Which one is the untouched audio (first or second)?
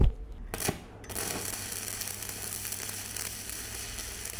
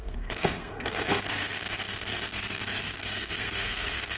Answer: first